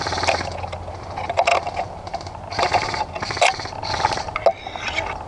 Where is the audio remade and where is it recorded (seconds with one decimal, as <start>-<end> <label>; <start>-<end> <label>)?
0.0-5.3 recorded